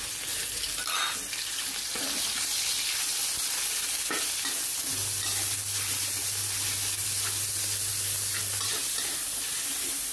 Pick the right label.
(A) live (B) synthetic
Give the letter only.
A